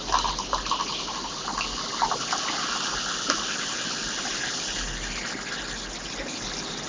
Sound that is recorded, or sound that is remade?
recorded